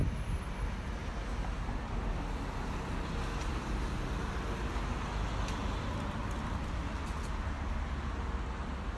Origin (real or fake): real